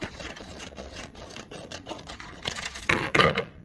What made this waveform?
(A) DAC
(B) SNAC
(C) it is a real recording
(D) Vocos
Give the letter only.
D